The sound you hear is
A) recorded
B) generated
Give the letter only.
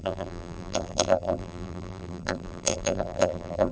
B